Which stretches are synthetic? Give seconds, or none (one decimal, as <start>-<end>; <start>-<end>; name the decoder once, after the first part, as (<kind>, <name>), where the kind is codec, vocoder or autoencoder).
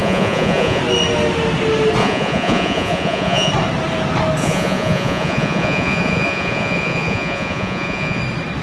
0.0-0.8 (vocoder, Vocos); 2.0-3.5; 4.4-8.2